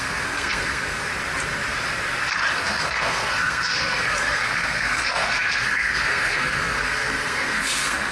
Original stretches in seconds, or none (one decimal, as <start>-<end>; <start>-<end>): 1.1-2.5